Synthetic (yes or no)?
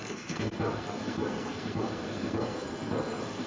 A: yes